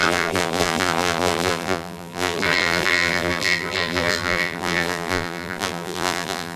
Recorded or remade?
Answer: remade